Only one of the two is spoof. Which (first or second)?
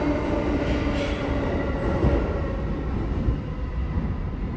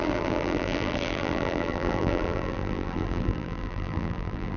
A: second